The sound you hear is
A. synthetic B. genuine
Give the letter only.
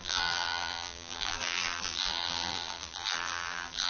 A